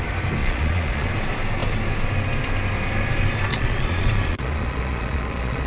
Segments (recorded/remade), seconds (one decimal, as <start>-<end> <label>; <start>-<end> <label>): 0.0-0.4 recorded; 0.4-1.1 remade; 1.1-3.5 recorded; 3.5-5.7 remade